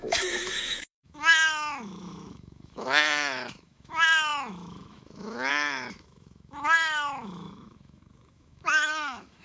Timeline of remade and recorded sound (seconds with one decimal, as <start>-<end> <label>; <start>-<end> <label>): 0.0-9.4 remade